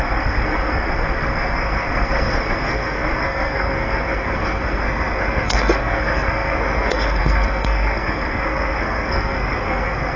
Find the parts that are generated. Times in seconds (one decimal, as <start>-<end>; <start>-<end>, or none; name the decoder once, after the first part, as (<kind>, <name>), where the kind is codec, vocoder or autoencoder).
0.0-10.2 (codec, SNAC)